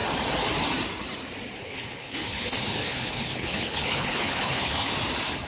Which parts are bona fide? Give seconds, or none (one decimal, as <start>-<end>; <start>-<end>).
0.0-1.6; 4.9-5.5